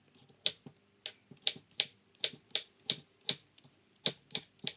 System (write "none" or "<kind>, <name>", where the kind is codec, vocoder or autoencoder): none